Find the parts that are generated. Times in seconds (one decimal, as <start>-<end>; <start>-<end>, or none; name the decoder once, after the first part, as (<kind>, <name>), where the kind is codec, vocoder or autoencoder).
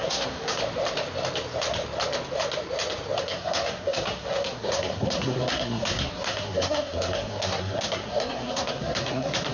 0.0-0.6 (codec, SNAC); 3.2-9.5